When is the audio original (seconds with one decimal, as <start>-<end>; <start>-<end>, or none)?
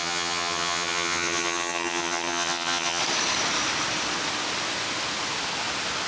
3.0-6.1